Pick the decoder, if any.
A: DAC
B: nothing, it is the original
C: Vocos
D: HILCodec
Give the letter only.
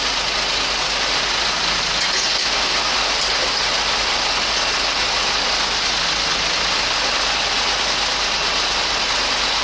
B